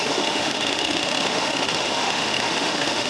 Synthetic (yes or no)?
yes